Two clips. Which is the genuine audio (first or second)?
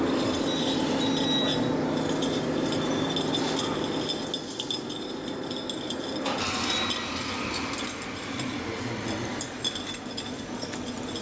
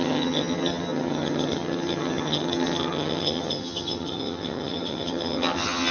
first